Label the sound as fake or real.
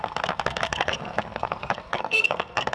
fake